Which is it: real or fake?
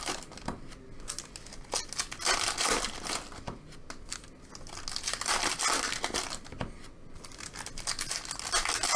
real